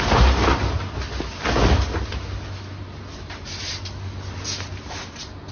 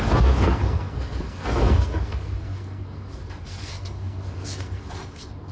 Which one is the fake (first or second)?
second